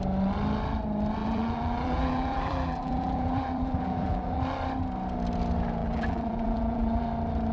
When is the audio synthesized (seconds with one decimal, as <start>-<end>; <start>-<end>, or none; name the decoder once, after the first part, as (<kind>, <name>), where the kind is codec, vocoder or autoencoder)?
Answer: 1.2-4.4 (vocoder, BigVGAN v2); 5.8-7.1